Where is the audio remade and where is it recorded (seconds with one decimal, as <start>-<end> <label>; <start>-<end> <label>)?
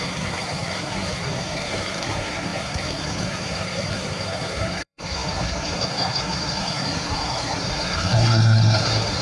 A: 0.0-9.2 remade